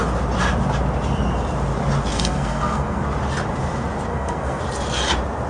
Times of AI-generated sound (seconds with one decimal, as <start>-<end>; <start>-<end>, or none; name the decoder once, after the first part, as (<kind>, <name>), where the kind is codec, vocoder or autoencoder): 2.1-3.0 (codec, SNAC); 4.1-4.6